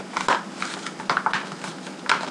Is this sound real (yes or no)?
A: yes